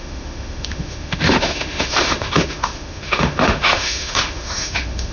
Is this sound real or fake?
fake